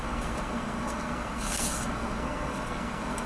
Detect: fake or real fake